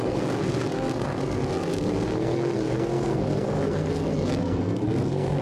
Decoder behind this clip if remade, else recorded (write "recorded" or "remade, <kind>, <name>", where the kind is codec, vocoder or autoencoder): remade, codec, SNAC